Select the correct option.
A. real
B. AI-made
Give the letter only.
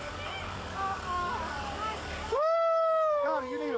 B